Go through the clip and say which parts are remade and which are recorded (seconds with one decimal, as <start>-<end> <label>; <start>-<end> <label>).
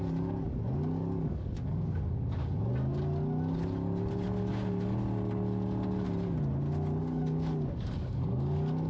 0.0-2.4 remade; 2.4-7.0 recorded; 7.0-8.9 remade